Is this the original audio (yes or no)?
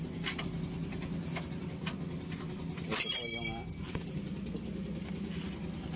yes